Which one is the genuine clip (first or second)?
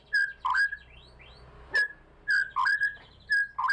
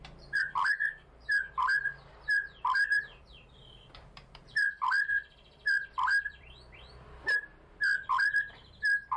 first